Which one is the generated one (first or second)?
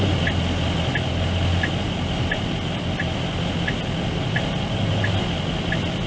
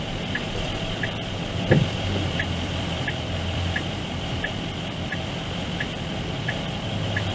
second